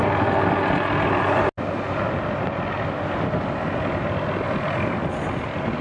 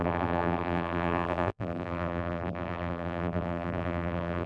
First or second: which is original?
first